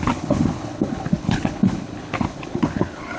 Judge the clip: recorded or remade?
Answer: remade